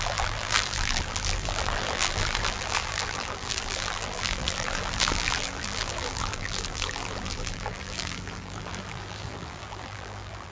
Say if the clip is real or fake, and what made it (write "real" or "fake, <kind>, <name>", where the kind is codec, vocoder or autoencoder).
fake, vocoder, BigVGAN v2